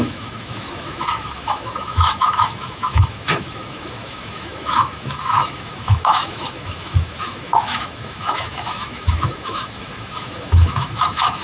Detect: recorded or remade remade